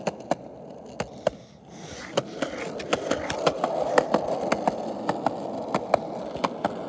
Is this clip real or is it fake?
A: real